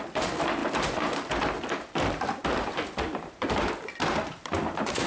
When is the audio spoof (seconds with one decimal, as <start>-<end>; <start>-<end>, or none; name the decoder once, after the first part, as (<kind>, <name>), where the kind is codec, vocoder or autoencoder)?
0.6-3.7 (vocoder, BigVGAN v2)